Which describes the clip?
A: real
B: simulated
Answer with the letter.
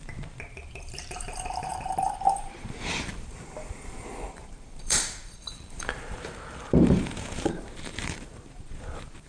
B